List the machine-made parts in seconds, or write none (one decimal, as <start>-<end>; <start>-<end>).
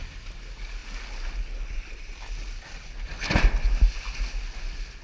none